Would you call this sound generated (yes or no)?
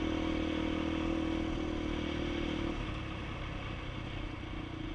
no